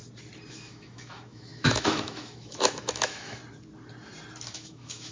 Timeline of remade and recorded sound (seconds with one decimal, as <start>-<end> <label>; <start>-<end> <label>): 0.0-0.5 recorded; 0.5-3.4 remade; 3.4-4.5 recorded; 4.5-5.1 remade